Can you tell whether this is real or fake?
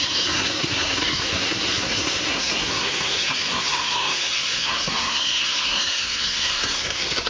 fake